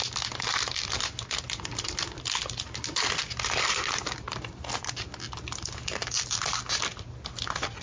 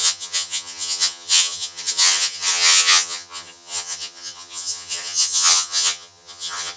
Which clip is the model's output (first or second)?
second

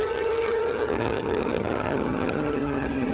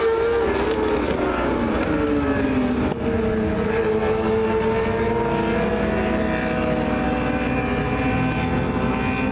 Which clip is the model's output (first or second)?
first